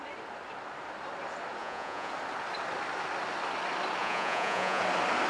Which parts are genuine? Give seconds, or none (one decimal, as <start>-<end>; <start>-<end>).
0.0-1.6; 2.1-4.0; 4.8-5.3